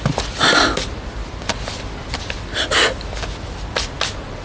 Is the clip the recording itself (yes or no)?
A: yes